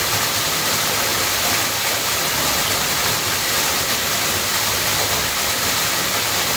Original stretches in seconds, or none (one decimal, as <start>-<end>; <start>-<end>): 0.0-6.6